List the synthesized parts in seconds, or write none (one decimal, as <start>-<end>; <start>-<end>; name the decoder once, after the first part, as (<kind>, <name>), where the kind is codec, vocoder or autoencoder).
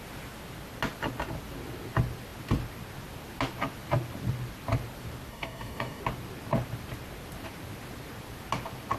5.3-6.0 (codec, DAC)